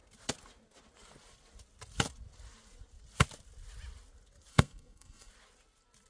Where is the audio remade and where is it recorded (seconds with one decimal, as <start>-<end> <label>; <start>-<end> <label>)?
0.0-4.5 recorded; 4.5-5.3 remade; 5.3-6.1 recorded